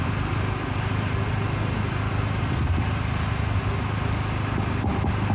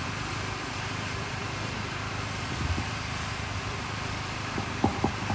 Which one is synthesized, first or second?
second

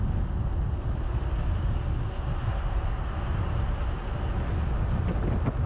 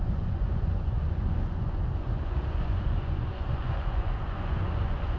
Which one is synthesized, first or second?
second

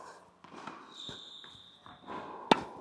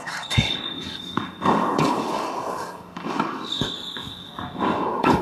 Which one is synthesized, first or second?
second